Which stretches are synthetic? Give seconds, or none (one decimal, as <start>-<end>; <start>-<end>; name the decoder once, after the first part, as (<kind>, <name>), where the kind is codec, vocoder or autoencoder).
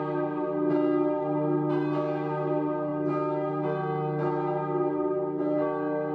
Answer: none